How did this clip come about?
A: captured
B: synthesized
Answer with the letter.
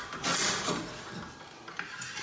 A